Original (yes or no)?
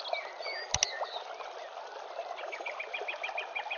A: yes